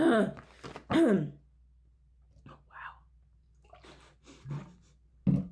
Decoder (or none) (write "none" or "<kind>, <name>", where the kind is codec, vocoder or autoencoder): none